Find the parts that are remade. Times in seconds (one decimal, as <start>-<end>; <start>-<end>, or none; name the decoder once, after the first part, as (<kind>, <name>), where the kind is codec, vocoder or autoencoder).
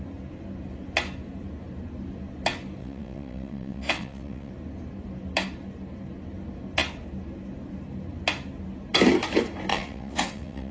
2.8-4.5 (vocoder, WaveNeXt); 9.7-10.7